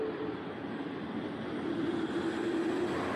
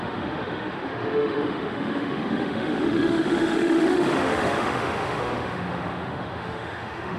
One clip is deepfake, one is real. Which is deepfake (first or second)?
second